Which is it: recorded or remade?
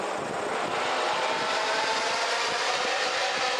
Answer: recorded